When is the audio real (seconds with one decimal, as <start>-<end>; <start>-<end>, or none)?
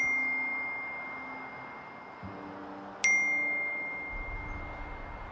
0.0-5.3